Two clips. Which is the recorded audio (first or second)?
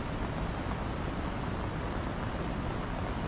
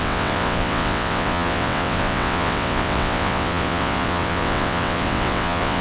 first